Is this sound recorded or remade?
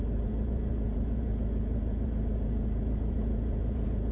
remade